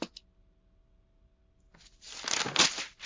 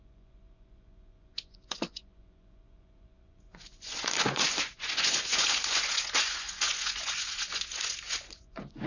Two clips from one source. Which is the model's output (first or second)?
second